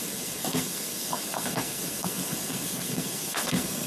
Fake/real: fake